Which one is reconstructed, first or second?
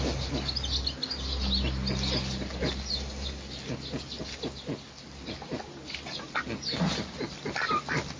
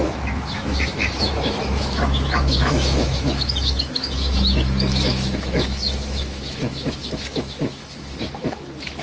second